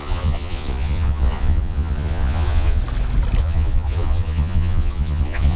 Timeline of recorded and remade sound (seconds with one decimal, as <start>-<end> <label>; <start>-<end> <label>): 0.0-2.8 remade; 2.8-3.4 recorded; 3.4-5.6 remade

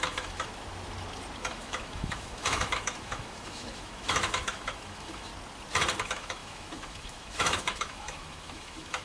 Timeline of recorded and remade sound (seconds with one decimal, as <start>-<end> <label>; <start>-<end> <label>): 0.0-0.5 remade; 0.5-1.5 recorded; 1.5-5.3 remade; 5.3-6.0 recorded; 6.0-9.0 remade